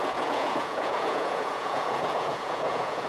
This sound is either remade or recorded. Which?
remade